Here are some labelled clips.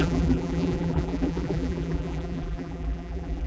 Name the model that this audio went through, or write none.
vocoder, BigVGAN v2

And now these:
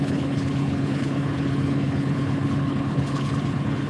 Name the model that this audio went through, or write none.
codec, HILCodec